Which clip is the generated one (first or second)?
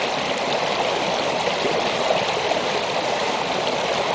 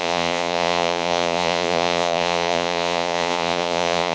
second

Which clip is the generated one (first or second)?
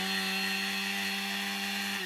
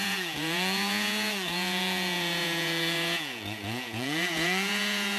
second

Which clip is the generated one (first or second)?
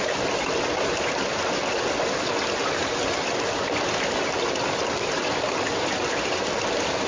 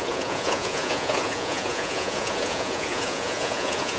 second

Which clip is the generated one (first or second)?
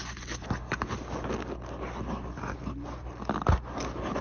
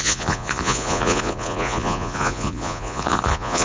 second